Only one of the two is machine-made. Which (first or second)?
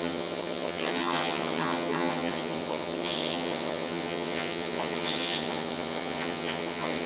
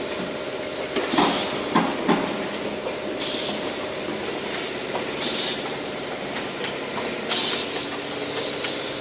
first